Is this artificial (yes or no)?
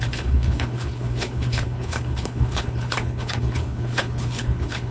yes